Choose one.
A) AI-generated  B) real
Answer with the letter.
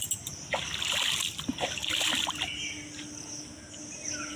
B